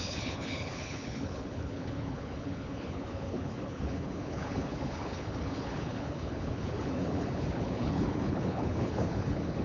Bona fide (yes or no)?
no